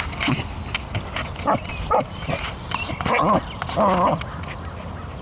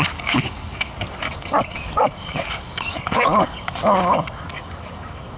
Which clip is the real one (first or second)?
first